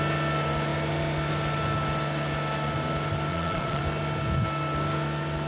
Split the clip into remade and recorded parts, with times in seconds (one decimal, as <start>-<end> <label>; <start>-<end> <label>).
0.0-3.3 recorded; 3.3-3.8 remade; 3.8-5.5 recorded